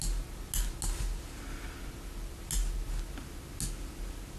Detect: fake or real real